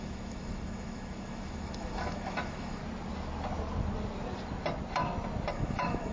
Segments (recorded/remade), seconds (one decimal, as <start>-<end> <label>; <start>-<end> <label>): 0.0-2.8 remade; 2.8-5.5 recorded; 5.5-6.1 remade